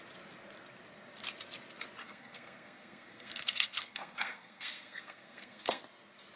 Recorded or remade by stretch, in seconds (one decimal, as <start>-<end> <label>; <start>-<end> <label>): 0.0-2.0 recorded; 2.0-5.8 remade; 5.8-6.4 recorded